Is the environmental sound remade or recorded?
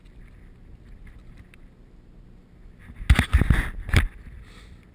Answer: recorded